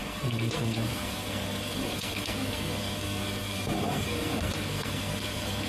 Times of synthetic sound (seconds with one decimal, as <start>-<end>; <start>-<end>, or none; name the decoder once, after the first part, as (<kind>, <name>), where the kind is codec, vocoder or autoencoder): 0.0-5.7 (codec, SNAC)